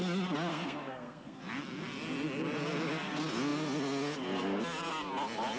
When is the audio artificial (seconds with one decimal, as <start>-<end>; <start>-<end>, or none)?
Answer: 0.5-1.4